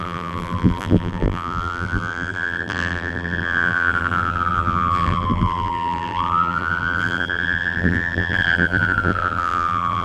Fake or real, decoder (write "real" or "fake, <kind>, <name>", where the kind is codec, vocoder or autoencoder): fake, vocoder, BigVGAN v2